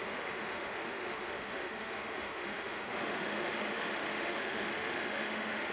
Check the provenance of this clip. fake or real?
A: fake